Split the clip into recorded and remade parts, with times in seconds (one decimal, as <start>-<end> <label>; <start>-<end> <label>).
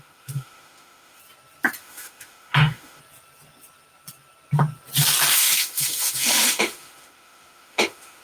0.0-1.2 remade; 1.2-1.8 recorded; 1.8-3.0 remade; 3.0-5.3 recorded; 5.3-8.2 remade